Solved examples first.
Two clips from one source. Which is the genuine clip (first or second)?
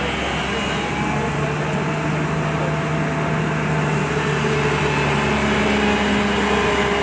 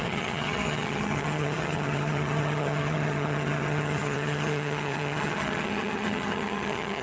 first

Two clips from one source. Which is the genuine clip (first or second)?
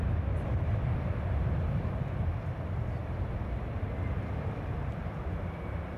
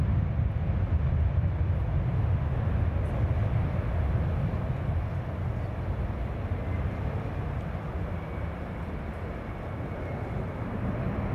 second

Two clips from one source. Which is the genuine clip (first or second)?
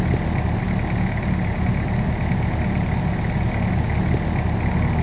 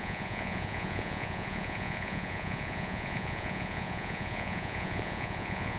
first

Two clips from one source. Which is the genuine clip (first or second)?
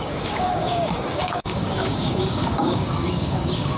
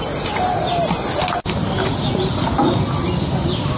second